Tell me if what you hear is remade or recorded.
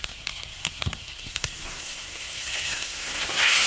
remade